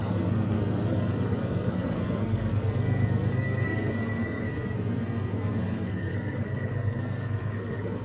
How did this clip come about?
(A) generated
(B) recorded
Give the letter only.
A